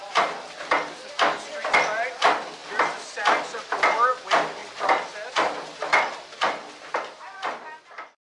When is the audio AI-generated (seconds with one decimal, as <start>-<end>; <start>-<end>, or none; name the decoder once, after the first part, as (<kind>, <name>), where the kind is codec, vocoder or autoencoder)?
none